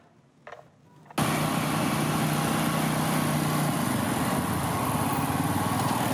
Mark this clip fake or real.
real